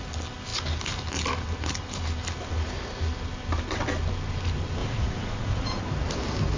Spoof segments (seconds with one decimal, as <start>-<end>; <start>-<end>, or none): 4.8-5.8